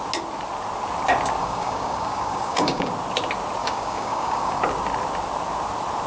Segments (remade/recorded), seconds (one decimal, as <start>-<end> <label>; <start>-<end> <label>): 0.0-1.4 recorded; 1.4-2.9 remade; 2.9-3.6 recorded; 3.6-4.6 remade; 4.6-6.1 recorded